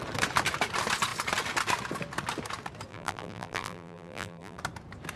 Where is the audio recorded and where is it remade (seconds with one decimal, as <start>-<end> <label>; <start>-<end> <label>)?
0.0-2.9 recorded; 2.9-4.6 remade; 4.6-5.2 recorded